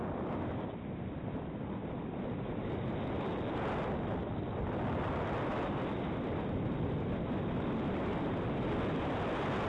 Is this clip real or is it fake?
real